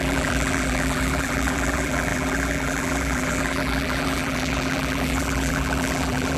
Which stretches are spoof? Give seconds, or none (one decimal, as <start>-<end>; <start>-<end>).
0.0-6.4